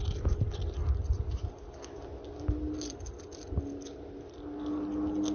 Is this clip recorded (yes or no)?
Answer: yes